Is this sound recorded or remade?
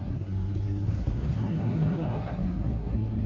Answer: remade